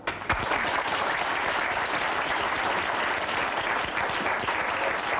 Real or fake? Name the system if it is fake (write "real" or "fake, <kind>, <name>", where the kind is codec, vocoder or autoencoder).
real